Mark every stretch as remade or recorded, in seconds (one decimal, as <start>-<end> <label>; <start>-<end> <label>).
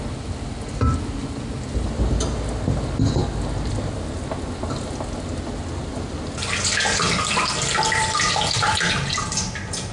0.0-9.9 recorded